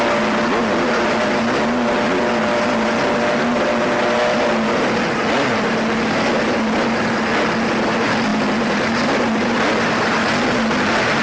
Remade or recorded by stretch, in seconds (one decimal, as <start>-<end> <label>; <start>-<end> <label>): 0.0-11.2 recorded